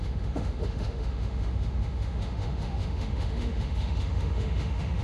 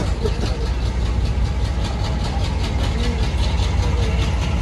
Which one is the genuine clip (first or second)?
second